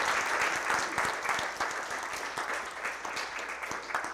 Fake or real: real